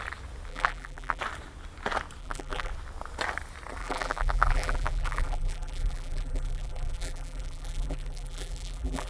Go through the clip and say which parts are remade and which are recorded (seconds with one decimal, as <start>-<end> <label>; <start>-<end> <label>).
0.0-0.5 recorded; 0.5-1.2 remade; 1.2-2.2 recorded; 2.2-2.7 remade; 2.7-3.8 recorded; 3.8-9.1 remade